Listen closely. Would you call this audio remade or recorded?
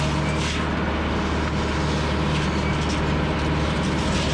recorded